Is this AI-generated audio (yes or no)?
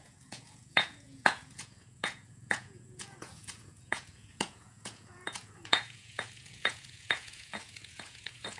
yes